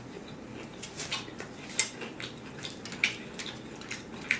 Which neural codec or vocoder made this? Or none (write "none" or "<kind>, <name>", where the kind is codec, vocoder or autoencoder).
none